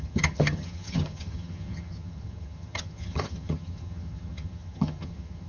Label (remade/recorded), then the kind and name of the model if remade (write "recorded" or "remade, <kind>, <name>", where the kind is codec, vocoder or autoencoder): remade, vocoder, HiFi-GAN